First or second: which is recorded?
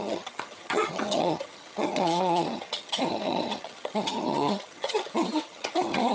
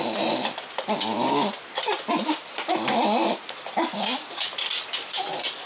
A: second